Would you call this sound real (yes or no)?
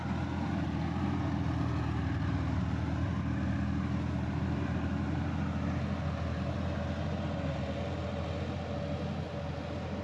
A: yes